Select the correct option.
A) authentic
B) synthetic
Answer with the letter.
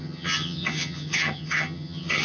B